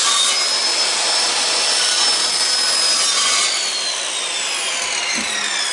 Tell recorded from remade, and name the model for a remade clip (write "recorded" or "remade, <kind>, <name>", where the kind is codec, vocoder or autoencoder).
recorded